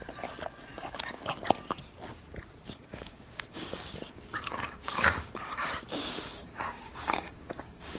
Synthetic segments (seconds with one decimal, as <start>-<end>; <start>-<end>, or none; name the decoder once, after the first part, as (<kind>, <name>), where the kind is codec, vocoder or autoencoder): 0.7-1.3 (codec, DAC); 2.9-8.0